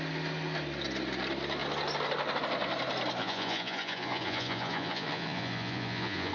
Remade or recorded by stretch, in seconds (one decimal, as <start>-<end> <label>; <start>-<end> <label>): 0.0-3.2 recorded; 3.2-6.3 remade